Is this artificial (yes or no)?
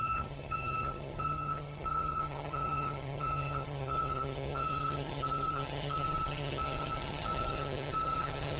yes